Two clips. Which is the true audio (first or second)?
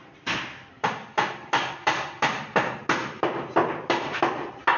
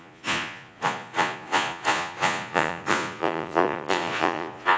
first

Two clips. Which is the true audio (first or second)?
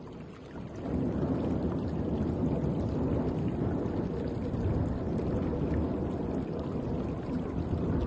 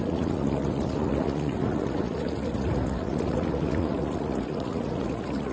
first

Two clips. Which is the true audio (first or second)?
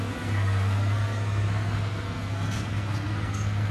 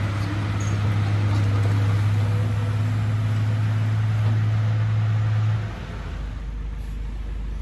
second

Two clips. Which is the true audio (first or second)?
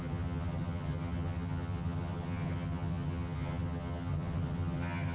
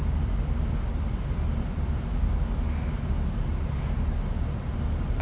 second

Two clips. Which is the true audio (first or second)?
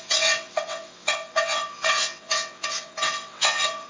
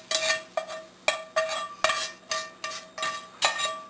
second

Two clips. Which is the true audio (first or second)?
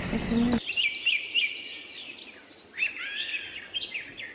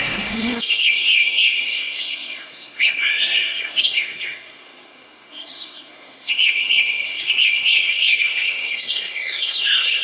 first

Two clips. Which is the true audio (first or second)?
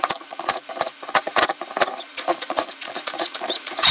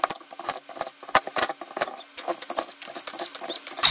second